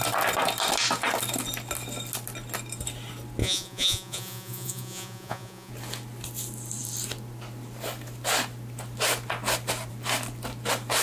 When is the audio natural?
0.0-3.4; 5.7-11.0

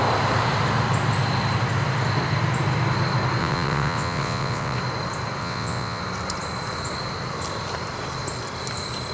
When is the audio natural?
0.0-3.4; 4.8-5.4; 6.0-9.1

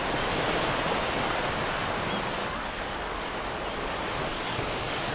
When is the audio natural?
0.0-2.4; 3.3-4.3

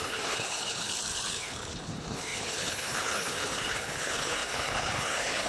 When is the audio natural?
none

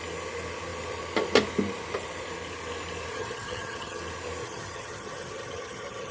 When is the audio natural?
0.0-3.1; 4.0-4.4

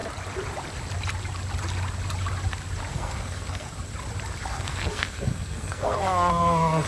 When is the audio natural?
0.0-2.9; 3.7-4.5